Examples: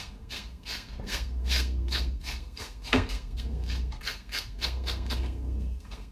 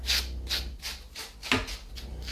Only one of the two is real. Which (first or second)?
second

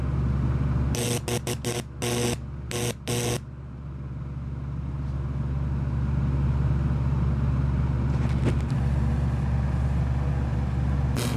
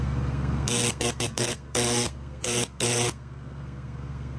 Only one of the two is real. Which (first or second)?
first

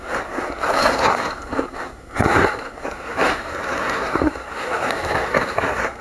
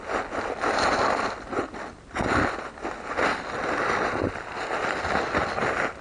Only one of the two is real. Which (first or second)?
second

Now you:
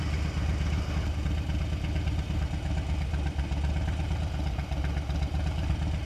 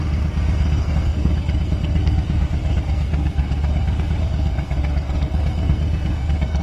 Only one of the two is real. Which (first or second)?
first